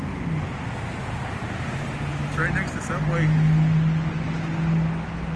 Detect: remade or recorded recorded